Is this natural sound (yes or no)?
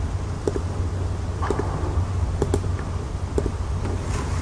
yes